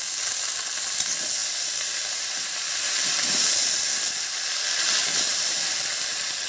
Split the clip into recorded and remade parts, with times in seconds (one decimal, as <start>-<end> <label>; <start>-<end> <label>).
0.0-5.3 recorded; 5.3-5.9 remade; 5.9-6.5 recorded